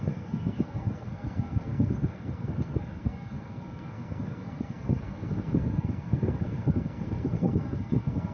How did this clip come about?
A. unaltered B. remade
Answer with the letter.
B